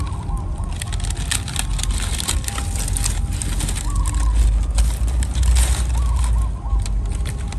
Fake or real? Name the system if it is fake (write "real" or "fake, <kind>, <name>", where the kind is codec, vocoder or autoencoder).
real